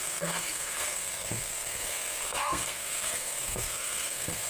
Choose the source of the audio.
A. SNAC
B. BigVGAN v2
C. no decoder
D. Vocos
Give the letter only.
A